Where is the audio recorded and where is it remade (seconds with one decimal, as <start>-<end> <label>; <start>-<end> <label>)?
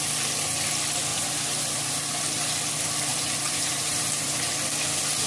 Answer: 0.0-1.1 recorded; 1.1-2.6 remade; 2.6-3.1 recorded; 3.1-4.5 remade; 4.5-5.3 recorded